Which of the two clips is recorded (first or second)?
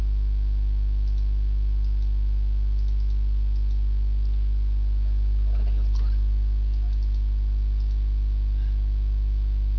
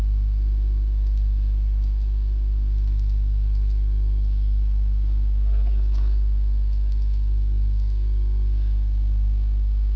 first